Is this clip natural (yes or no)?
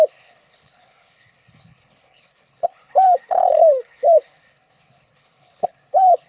no